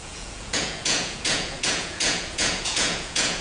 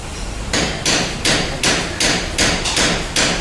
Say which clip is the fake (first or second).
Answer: first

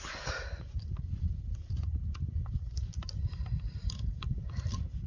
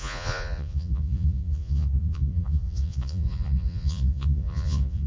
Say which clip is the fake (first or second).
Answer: second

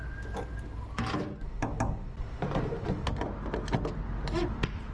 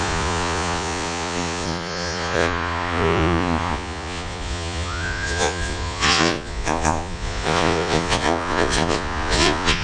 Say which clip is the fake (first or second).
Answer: second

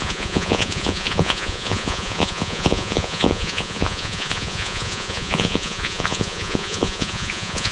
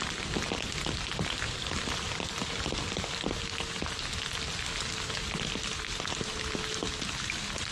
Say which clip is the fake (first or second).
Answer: first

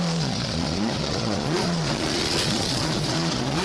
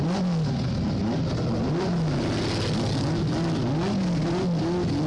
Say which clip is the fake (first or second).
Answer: first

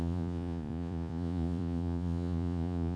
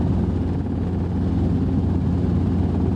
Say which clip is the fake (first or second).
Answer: first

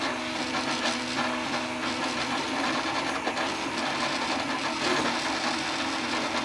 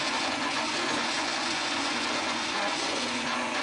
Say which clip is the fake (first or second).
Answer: second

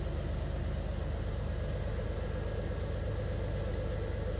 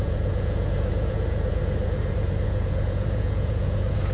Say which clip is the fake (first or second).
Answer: second